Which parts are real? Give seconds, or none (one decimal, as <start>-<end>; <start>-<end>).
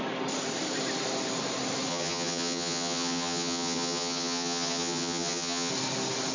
0.0-1.9; 5.7-6.3